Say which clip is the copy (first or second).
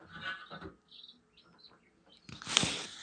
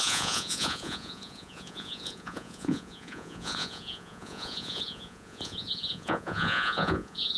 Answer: second